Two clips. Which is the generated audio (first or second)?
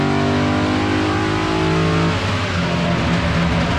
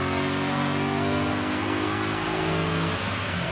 second